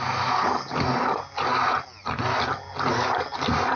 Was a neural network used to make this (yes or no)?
no